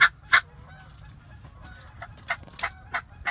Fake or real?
real